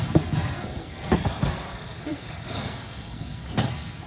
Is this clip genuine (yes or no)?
no